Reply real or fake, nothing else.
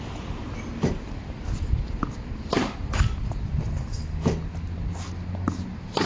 real